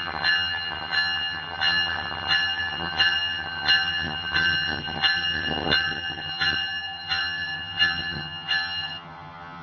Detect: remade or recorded remade